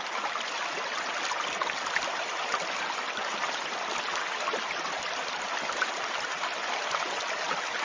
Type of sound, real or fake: real